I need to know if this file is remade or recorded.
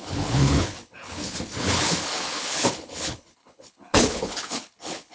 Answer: remade